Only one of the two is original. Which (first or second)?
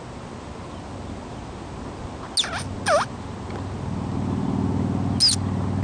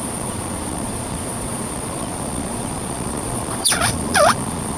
first